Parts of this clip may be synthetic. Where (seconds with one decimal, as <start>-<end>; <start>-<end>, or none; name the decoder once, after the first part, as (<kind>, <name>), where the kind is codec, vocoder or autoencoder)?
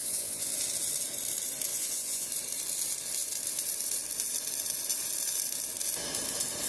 0.0-0.5 (vocoder, Vocos); 1.7-2.3